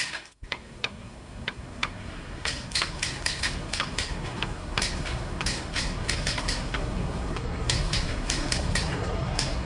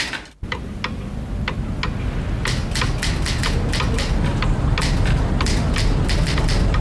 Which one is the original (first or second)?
second